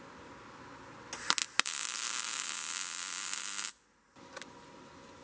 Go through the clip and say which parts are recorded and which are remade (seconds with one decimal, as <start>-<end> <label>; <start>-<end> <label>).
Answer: 0.0-5.2 recorded